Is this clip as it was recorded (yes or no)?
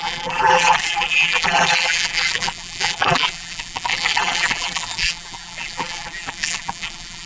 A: no